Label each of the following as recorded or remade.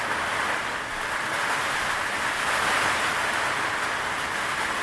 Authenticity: recorded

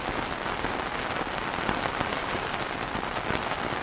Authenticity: recorded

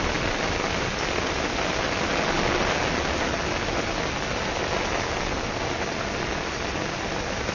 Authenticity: recorded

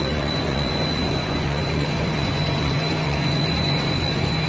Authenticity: remade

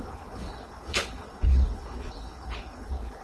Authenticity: remade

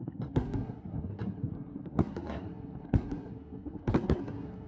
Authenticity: remade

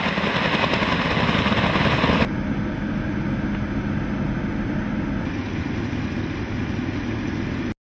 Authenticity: recorded